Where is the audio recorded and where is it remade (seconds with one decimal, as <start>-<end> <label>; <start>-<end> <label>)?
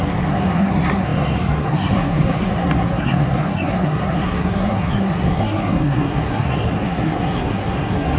0.0-8.2 remade